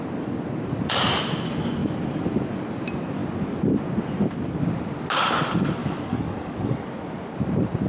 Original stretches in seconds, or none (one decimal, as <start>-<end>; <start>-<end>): 0.0-5.8; 6.9-7.9